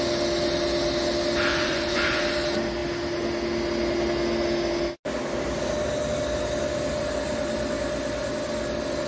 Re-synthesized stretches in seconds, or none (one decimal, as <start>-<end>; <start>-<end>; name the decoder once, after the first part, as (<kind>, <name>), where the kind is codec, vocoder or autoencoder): 1.5-2.2 (vocoder, Vocos)